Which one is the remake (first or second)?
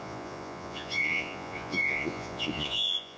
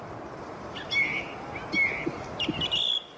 first